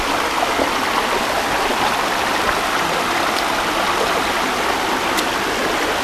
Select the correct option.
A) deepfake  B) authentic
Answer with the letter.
B